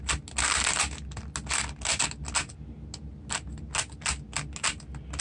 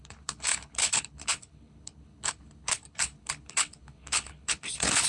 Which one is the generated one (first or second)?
second